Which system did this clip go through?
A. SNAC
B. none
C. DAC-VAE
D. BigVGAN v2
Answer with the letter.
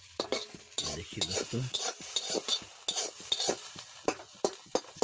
B